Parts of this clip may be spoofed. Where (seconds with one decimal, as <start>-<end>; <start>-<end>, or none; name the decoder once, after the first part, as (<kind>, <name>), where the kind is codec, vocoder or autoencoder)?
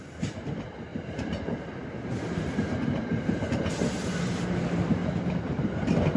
0.9-4.6 (vocoder, BigVGAN v2); 5.0-5.7